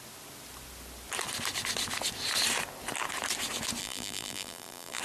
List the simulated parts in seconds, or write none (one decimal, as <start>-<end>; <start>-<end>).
3.8-5.0